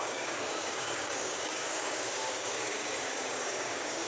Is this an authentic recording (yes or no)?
no